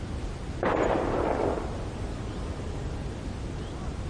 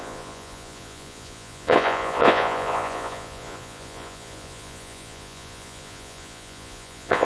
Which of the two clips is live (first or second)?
first